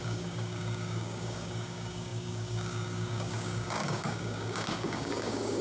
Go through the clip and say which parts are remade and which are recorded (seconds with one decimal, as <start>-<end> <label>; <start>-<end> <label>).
0.0-5.6 remade